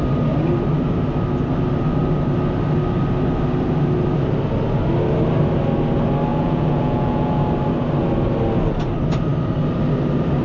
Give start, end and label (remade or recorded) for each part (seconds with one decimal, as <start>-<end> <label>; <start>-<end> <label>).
0.0-6.3 recorded; 6.3-7.4 remade; 7.4-10.4 recorded